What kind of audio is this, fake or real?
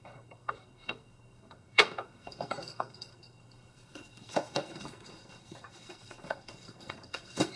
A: fake